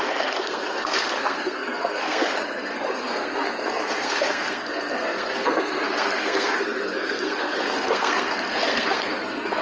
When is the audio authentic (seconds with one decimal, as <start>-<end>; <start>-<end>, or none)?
none